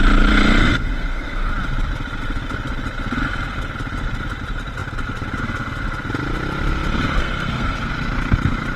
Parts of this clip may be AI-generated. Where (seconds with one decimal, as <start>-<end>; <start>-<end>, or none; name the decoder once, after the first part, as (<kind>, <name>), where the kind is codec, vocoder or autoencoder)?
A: 0.6-1.5 (codec, SNAC); 7.2-7.9